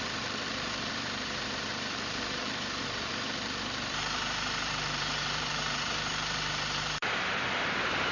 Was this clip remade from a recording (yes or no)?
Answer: yes